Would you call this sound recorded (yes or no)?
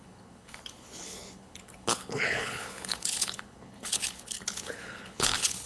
no